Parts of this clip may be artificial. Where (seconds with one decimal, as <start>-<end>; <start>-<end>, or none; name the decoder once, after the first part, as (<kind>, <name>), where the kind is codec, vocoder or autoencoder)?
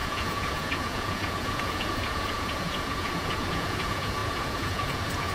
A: 0.0-5.3 (vocoder, Vocos)